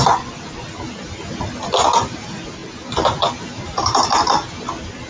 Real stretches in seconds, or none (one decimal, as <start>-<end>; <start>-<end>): 0.0-5.1